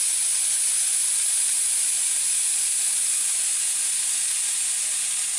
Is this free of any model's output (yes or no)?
yes